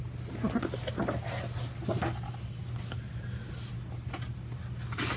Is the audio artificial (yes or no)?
no